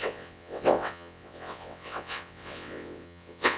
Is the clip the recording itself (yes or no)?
no